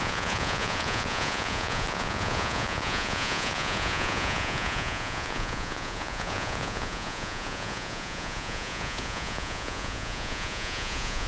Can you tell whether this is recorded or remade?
remade